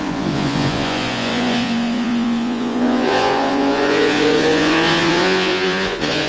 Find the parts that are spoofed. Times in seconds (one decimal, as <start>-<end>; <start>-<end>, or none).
0.0-6.3